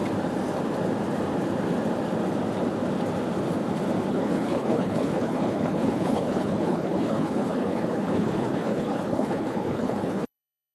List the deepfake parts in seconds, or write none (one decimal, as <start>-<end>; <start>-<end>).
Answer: 4.1-10.7